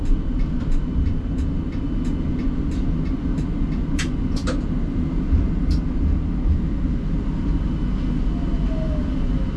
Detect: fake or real real